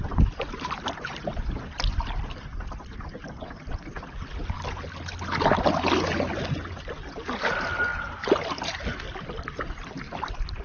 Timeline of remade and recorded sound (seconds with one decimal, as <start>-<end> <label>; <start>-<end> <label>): 0.0-10.6 recorded